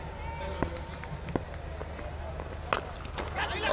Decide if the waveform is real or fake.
real